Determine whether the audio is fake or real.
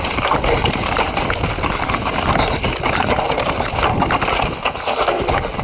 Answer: real